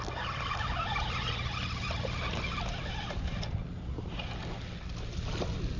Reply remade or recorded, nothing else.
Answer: recorded